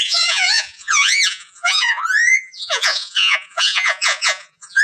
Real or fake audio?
fake